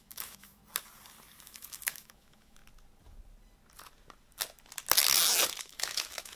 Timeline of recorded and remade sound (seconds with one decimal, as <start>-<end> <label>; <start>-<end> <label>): 0.0-0.6 remade; 0.6-1.4 recorded; 1.4-2.6 remade; 2.6-5.6 recorded; 5.6-6.4 remade